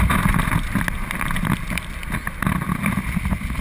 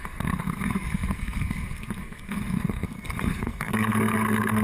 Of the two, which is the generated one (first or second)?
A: second